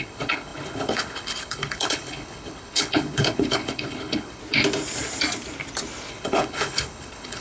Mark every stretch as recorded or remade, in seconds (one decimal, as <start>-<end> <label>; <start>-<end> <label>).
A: 0.0-4.4 remade; 4.4-6.1 recorded; 6.1-7.4 remade